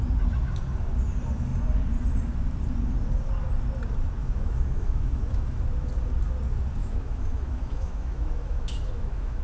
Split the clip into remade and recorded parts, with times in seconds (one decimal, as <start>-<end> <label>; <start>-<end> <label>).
0.0-4.2 recorded; 4.2-5.6 remade; 5.6-6.8 recorded; 6.8-9.4 remade